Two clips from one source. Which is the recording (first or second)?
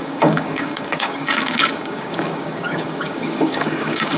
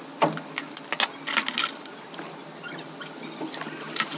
second